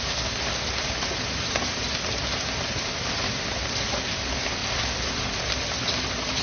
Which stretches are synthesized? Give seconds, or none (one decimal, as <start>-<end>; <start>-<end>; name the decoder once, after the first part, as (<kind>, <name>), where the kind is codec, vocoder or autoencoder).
none